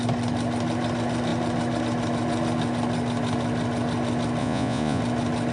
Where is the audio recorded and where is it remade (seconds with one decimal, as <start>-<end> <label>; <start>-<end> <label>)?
0.0-4.4 recorded; 4.4-5.0 remade; 5.0-5.5 recorded